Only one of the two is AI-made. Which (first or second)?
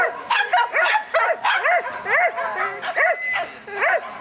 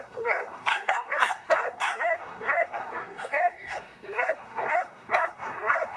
second